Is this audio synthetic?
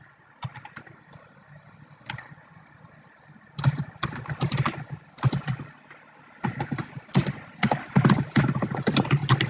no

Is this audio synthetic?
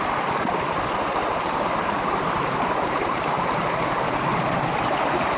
yes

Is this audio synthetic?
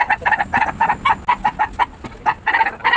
no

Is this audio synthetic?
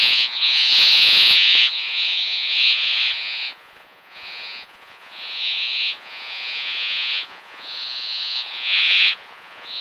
yes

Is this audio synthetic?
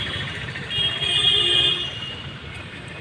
yes